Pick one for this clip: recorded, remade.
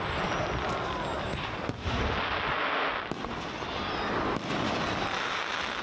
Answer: recorded